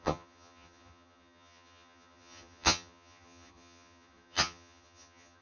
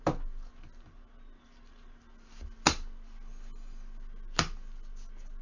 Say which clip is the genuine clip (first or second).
second